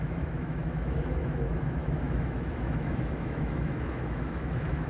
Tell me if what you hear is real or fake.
fake